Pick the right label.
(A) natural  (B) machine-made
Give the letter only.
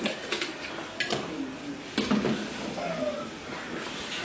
A